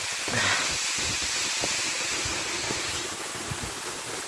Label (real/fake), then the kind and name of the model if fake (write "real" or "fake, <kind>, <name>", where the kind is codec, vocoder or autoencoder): real